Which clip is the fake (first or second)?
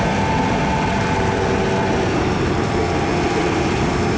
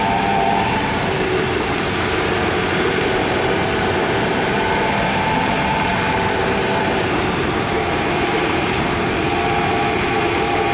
second